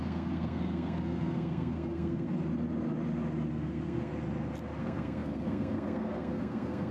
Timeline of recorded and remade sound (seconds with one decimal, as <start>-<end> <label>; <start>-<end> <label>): 0.0-2.3 remade; 2.3-3.5 recorded; 3.5-4.1 remade; 4.1-4.8 recorded; 4.8-6.9 remade